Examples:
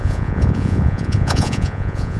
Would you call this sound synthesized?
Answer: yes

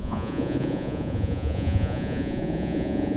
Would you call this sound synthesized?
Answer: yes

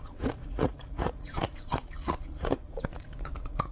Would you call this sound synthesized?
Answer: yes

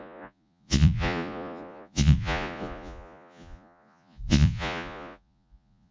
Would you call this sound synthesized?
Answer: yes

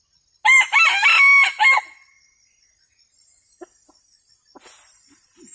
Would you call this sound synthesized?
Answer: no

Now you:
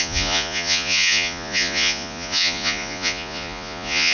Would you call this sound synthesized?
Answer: yes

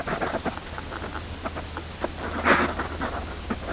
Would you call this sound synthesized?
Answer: no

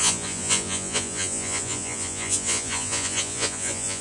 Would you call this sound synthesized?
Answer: yes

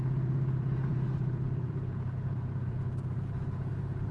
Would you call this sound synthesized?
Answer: yes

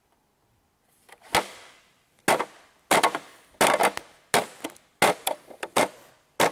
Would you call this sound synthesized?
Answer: no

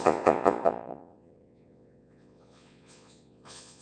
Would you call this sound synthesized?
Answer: yes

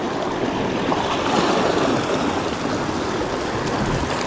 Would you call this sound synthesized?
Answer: no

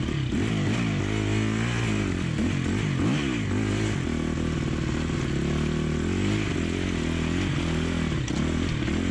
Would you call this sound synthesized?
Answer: no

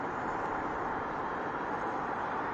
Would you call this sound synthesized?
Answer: no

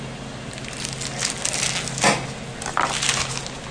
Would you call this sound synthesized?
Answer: no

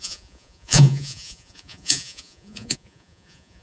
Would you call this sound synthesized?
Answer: yes